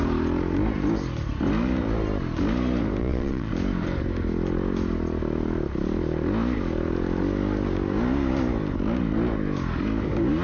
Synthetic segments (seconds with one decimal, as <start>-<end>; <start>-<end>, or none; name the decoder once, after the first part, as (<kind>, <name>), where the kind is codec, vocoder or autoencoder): 3.0-3.5 (vocoder, Vocos)